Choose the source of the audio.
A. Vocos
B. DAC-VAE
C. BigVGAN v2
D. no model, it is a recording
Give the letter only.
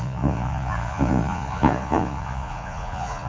A